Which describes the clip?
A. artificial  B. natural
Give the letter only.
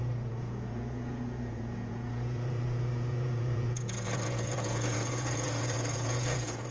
A